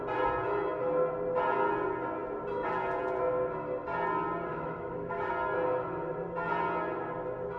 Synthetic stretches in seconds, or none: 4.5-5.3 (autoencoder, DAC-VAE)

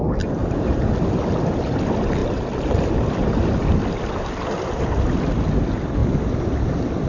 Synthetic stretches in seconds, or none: 0.4-1.2 (vocoder, BigVGAN v2); 2.2-3.8

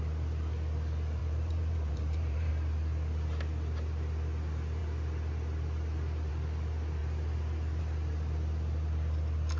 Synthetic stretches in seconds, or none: 1.2-2.5 (vocoder, BigVGAN v2)

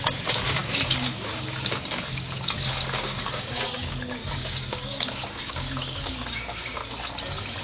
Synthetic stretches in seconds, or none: 0.0-6.8 (codec, DAC)

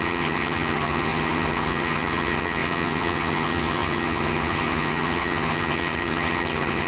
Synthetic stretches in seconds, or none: 0.0-6.9 (vocoder, HiFi-GAN)

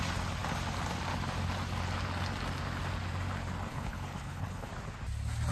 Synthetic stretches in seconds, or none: 3.7-4.7 (codec, HILCodec)

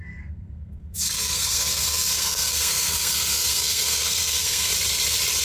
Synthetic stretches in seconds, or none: 0.0-4.7 (codec, SNAC)